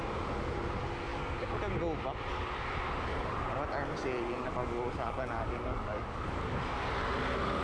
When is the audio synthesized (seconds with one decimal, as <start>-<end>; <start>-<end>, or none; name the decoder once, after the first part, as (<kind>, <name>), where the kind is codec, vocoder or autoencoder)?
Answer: 1.1-1.6 (codec, DAC); 4.6-6.6